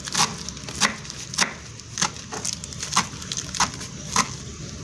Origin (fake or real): real